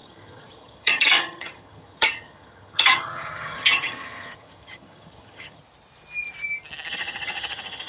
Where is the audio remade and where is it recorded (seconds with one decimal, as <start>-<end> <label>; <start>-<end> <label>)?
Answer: 0.0-5.6 remade; 5.6-6.9 recorded; 6.9-7.9 remade